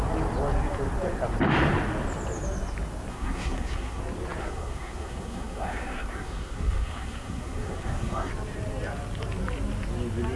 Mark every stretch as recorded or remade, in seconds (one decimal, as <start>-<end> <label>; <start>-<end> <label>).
0.0-3.1 recorded; 3.1-4.0 remade; 4.0-4.4 recorded; 4.4-8.3 remade; 8.3-10.4 recorded

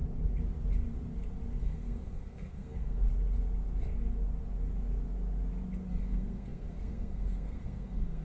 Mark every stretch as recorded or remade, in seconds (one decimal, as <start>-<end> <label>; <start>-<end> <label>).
0.0-1.6 recorded; 1.6-3.1 remade; 3.1-5.9 recorded; 5.9-8.2 remade

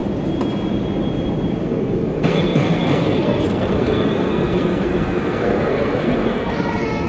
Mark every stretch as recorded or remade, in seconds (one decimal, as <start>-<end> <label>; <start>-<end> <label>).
0.0-1.6 recorded; 1.6-7.1 remade

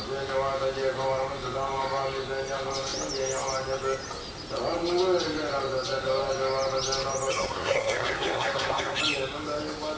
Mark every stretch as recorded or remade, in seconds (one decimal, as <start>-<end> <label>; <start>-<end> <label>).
0.0-7.3 recorded; 7.3-9.0 remade; 9.0-10.0 recorded

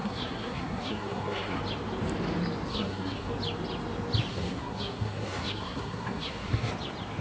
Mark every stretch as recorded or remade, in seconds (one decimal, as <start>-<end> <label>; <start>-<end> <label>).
0.0-1.6 remade; 1.6-2.7 recorded; 2.7-3.3 remade; 3.3-4.3 recorded; 4.3-6.7 remade; 6.7-7.2 recorded